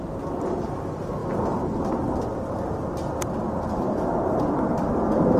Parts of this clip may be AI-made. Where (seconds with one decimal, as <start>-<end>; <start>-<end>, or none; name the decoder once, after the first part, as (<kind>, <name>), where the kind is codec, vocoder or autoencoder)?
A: none

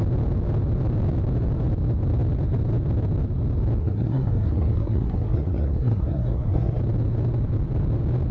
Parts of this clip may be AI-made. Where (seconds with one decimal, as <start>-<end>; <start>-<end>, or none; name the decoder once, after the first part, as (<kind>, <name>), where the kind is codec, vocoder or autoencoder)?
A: 3.8-6.8 (codec, SNAC)

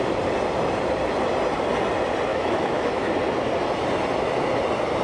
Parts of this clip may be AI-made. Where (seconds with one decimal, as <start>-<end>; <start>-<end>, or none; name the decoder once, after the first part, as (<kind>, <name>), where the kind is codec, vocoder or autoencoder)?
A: 2.3-3.1 (autoencoder, DAC-VAE)

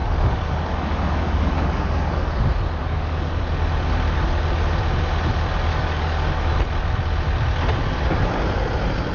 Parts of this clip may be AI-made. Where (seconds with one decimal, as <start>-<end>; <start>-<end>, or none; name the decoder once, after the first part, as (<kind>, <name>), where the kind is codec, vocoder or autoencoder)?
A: 0.0-2.3 (codec, DAC); 2.8-3.4; 5.7-6.5

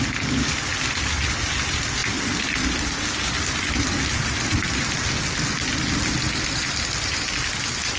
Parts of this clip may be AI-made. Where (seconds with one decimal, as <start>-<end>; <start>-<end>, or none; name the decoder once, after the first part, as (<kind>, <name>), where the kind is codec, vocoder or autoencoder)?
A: none

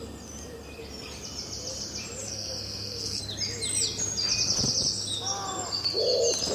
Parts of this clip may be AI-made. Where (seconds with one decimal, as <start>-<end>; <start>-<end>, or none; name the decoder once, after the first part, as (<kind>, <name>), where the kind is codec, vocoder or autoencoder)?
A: 2.2-3.2 (codec, SNAC)